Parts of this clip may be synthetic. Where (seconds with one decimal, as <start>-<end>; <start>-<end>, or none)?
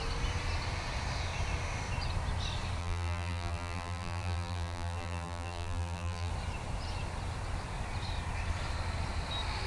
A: 2.8-6.3